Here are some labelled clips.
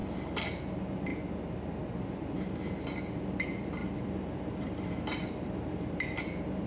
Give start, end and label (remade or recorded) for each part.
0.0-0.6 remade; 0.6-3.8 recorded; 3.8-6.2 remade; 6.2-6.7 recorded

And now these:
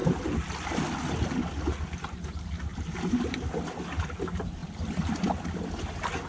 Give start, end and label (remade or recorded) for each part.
0.0-2.7 recorded; 2.7-3.8 remade; 3.8-6.3 recorded

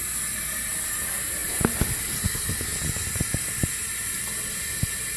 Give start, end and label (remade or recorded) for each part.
0.0-5.2 recorded